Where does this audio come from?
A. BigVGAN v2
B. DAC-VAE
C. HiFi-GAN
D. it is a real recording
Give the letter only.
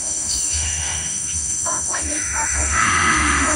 B